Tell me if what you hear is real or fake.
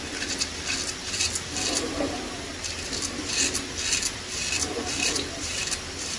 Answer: real